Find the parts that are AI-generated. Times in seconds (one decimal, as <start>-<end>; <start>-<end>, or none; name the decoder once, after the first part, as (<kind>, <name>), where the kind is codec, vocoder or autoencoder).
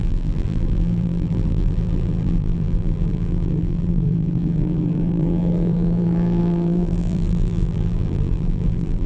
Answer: 0.0-9.1 (vocoder, BigVGAN v2)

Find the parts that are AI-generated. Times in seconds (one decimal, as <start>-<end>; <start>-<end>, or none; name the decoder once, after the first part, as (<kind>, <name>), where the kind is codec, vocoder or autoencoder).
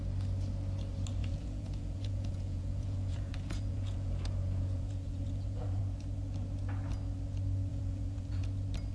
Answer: 1.2-5.8 (vocoder, Vocos); 7.7-8.4